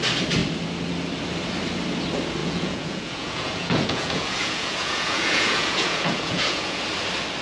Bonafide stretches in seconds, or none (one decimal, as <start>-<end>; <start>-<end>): 0.0-2.4; 6.8-7.4